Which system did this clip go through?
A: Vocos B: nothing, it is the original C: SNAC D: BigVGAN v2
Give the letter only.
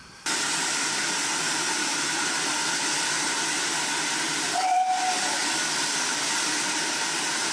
B